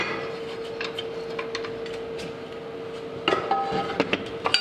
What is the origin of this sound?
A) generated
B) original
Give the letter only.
B